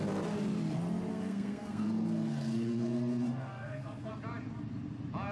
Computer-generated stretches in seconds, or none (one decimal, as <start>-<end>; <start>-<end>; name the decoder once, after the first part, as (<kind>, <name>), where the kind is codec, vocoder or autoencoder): 1.1-4.1 (codec, SNAC)